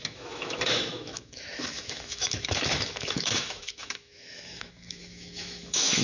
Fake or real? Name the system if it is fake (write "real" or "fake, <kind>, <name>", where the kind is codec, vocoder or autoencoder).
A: fake, autoencoder, DAC-VAE